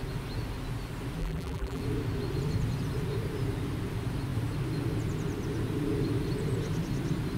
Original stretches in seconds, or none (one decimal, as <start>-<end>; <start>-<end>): 0.0-1.2; 1.8-7.4